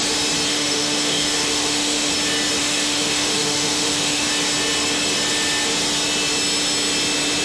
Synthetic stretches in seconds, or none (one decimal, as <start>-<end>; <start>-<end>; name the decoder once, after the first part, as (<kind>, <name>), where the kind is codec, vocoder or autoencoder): 0.5-2.1 (autoencoder, DAC-VAE); 2.6-4.3